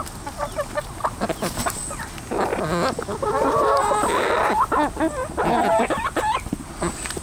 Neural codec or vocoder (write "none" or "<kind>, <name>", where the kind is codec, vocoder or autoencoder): none